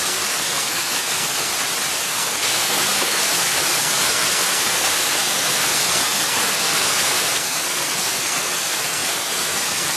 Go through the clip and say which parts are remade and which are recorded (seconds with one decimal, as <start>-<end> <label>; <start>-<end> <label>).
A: 0.0-1.5 remade; 1.5-2.0 recorded; 2.0-10.0 remade